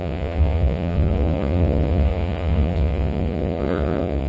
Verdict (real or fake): fake